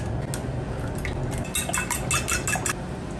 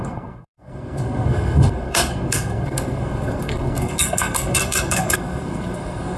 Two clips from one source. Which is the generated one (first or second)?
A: second